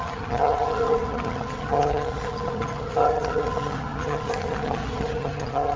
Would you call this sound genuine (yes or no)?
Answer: no